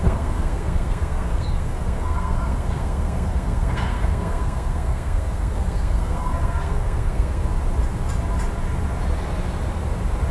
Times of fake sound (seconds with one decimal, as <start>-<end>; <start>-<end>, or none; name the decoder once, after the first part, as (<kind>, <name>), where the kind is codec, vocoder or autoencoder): 0.0-7.4 (codec, SNAC)